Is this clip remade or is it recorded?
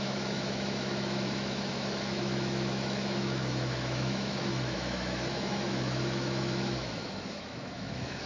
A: remade